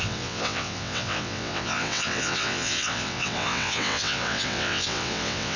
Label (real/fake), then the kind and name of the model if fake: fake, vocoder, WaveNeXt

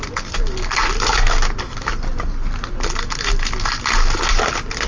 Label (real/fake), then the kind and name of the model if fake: real